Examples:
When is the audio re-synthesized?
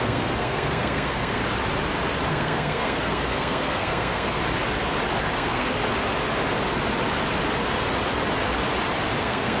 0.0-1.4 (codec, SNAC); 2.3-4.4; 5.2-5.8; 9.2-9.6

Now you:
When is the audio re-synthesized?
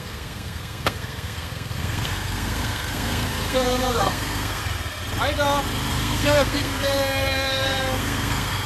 0.0-4.6 (codec, SNAC); 5.9-8.7